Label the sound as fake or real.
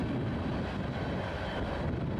real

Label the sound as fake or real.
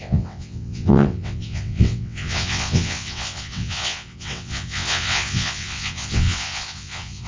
fake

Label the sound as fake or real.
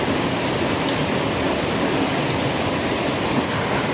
real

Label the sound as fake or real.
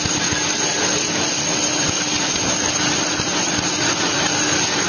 real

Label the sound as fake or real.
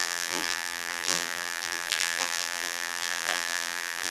fake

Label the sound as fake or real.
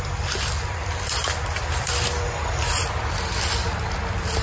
real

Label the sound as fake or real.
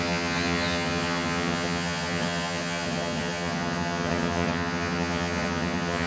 fake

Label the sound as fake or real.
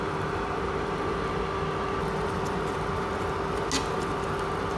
real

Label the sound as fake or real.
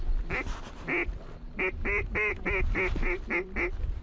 real